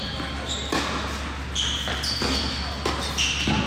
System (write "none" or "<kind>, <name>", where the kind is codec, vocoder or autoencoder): none